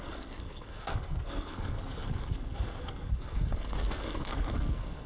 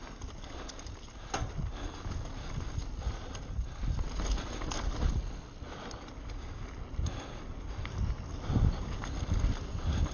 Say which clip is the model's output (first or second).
first